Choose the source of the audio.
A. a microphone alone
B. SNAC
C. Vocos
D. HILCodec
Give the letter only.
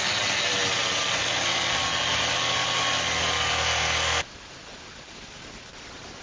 A